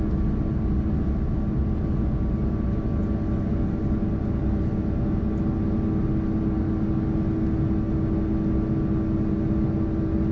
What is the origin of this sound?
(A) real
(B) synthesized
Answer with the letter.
A